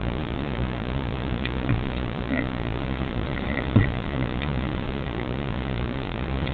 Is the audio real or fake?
fake